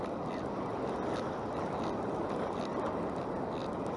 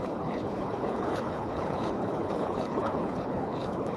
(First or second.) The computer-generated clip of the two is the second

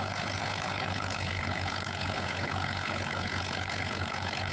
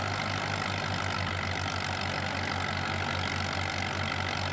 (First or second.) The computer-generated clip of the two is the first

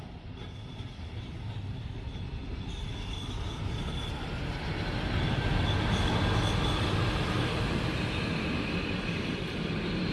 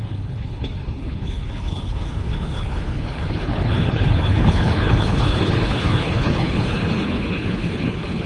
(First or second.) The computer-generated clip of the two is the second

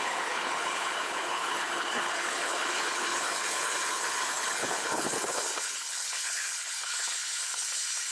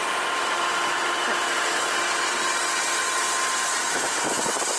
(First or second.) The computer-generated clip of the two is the first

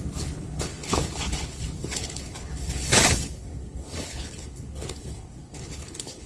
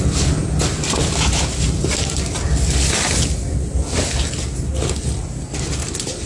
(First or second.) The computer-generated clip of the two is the first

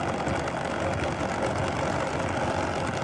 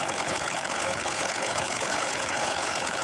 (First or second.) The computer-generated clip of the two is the second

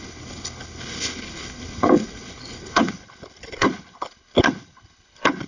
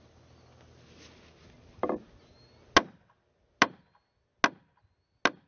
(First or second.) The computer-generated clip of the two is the first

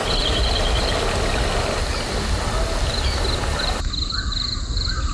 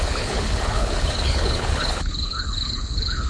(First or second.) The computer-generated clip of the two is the second